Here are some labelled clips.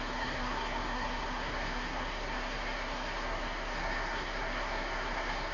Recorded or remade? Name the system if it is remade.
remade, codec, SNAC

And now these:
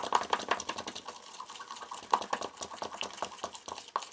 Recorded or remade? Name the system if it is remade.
recorded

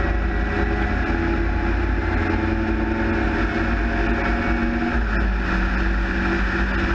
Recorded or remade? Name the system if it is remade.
recorded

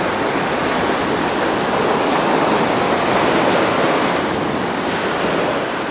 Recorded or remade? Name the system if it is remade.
recorded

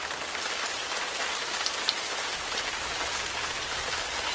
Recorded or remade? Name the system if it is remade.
recorded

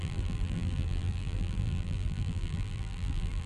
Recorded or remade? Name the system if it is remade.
remade, vocoder, BigVGAN v2